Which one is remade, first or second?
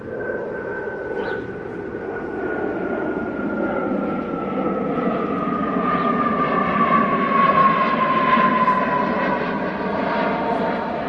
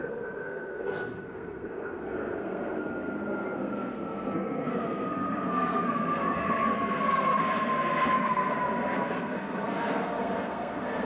second